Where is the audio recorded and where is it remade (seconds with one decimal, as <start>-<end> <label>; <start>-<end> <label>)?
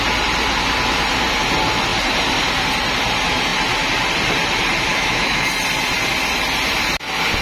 0.0-4.9 recorded; 4.9-5.5 remade; 5.5-7.4 recorded